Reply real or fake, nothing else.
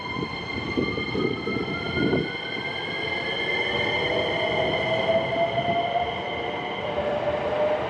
real